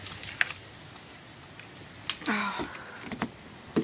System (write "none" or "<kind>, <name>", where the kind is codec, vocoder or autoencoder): none